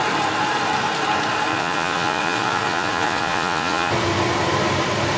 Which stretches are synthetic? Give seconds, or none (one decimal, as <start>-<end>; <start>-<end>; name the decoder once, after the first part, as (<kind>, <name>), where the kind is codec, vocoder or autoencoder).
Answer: 1.5-3.9 (vocoder, Vocos)